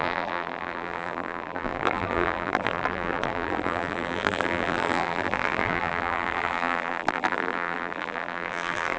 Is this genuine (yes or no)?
no